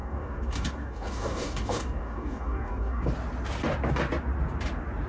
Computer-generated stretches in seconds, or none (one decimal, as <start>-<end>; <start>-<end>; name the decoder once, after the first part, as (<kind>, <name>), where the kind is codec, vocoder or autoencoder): 0.0-3.1 (codec, DAC)